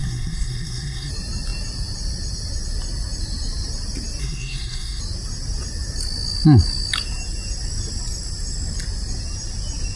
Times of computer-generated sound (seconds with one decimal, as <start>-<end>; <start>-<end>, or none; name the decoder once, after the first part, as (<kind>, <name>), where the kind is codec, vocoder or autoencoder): 0.0-1.1 (codec, SNAC); 4.2-5.0